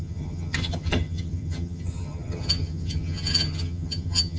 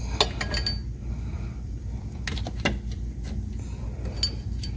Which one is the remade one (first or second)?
first